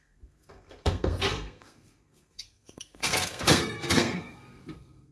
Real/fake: fake